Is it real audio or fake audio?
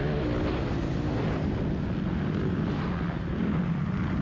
real